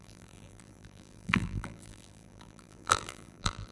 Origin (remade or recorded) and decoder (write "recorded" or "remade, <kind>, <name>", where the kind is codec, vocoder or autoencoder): remade, vocoder, BigVGAN v2